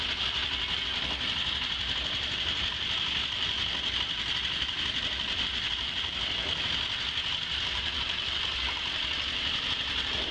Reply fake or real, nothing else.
real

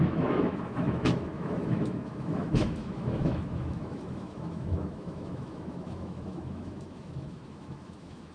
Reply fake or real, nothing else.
fake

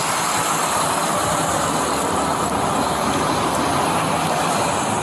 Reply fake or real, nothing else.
real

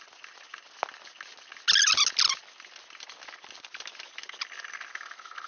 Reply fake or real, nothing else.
real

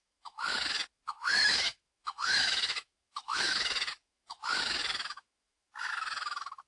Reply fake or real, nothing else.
fake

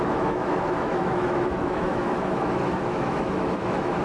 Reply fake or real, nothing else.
fake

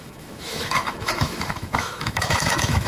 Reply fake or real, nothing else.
fake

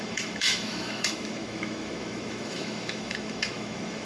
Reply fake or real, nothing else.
fake